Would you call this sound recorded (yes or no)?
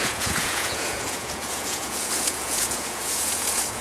no